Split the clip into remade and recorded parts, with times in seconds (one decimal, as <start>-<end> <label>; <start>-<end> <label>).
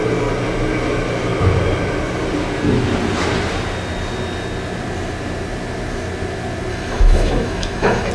0.0-6.7 recorded; 6.7-8.1 remade